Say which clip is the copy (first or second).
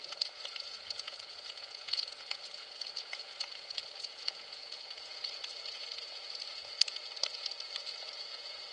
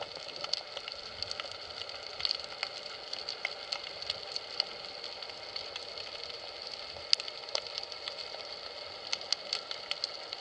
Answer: first